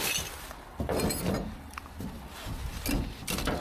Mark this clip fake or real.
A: real